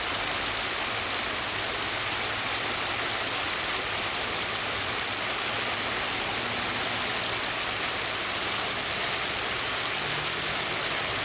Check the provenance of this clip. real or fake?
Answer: real